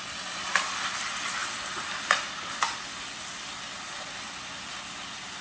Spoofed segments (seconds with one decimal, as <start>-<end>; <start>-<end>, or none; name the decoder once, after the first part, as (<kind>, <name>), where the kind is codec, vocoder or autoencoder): none